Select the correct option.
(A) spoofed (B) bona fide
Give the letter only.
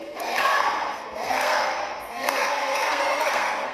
A